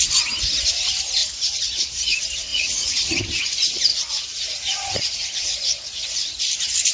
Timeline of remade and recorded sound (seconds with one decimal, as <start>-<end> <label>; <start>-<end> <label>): 0.0-2.5 recorded; 2.5-3.2 remade; 3.2-3.9 recorded; 3.9-6.4 remade; 6.4-6.9 recorded